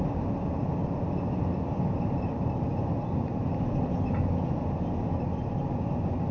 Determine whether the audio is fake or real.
real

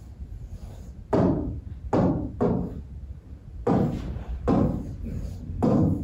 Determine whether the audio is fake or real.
real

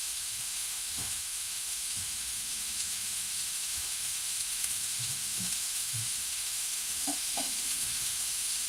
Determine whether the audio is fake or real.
fake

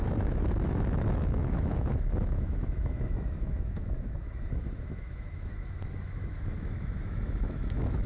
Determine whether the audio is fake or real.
fake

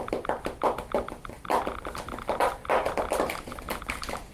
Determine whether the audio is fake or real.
real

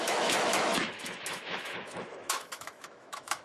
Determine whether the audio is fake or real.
fake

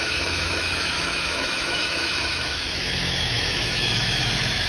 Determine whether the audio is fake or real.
fake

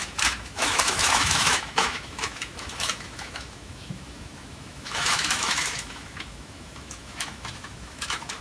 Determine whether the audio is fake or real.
fake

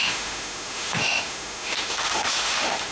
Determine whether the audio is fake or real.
fake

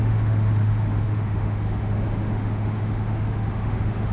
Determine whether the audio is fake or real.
fake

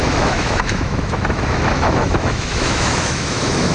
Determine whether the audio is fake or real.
fake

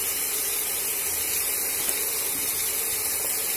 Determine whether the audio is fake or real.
real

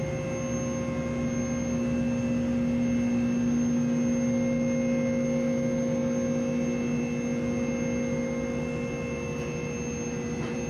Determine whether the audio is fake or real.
real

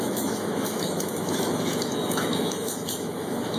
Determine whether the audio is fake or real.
fake